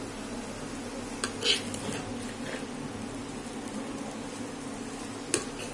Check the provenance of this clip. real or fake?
real